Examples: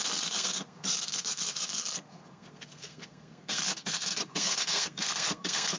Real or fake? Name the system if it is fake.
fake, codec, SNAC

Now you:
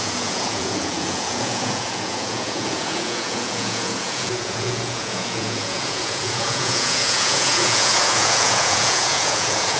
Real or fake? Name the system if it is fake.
fake, vocoder, Vocos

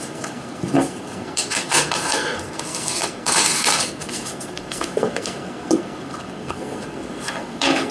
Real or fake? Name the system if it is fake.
fake, codec, SNAC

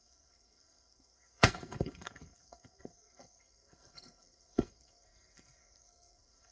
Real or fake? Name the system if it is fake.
fake, codec, SNAC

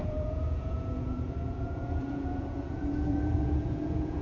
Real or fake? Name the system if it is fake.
fake, vocoder, Vocos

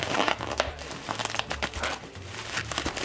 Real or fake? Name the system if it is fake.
real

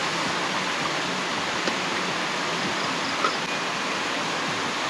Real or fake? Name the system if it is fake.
real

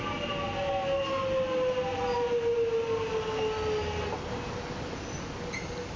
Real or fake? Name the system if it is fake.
real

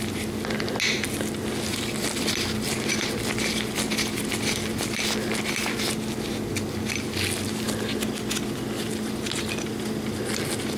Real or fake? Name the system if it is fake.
real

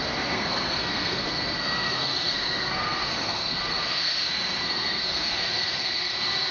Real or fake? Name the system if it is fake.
fake, codec, SNAC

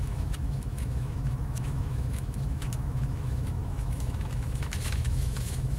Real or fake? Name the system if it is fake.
fake, autoencoder, DAC-VAE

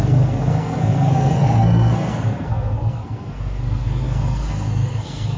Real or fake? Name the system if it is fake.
fake, codec, SNAC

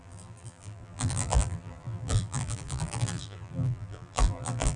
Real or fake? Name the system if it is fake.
fake, vocoder, BigVGAN v2